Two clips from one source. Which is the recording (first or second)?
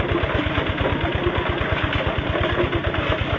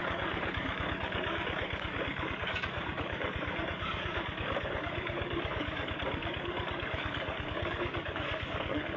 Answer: first